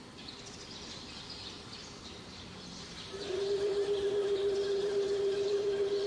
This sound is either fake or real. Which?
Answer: fake